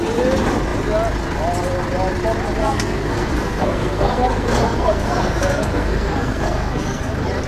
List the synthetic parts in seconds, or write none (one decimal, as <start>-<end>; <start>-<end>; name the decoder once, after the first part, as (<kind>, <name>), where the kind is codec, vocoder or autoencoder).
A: 2.6-7.1 (codec, SNAC)